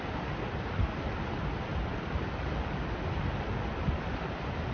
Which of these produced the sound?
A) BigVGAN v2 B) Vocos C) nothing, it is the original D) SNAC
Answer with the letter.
A